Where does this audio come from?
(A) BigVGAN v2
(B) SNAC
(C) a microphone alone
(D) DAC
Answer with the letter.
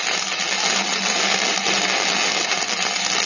C